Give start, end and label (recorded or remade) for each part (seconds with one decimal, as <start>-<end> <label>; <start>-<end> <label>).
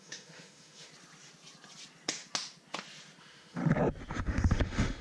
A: 0.0-0.9 remade; 0.9-3.2 recorded; 3.2-3.6 remade; 3.6-4.2 recorded; 4.2-5.0 remade